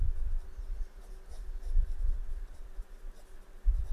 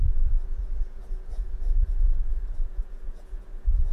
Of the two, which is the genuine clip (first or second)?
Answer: first